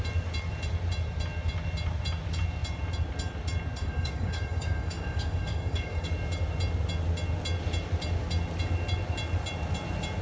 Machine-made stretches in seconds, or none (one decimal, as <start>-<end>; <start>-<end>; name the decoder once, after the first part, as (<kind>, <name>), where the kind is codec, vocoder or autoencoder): 3.8-6.1 (codec, DAC)